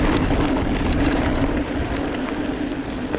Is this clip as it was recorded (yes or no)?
yes